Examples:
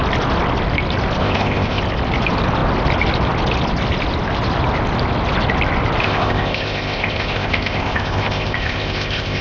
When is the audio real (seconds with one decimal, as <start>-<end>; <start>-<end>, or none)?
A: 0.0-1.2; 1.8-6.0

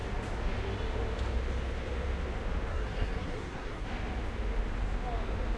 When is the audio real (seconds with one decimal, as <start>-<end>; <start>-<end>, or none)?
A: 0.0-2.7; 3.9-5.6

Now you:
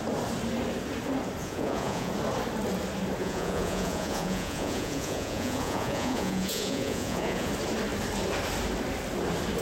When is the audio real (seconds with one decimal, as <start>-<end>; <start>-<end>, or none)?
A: 0.0-1.4; 2.1-3.2; 7.5-9.6

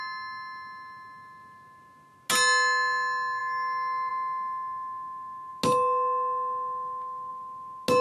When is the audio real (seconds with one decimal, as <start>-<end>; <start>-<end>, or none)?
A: 0.0-8.0

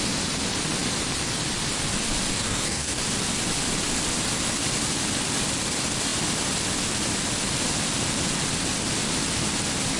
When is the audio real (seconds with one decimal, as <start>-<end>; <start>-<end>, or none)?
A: 0.0-2.3; 3.0-10.0